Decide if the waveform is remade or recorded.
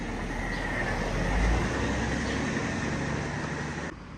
recorded